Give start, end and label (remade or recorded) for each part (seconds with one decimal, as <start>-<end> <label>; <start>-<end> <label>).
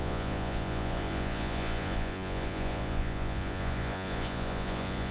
0.0-5.1 remade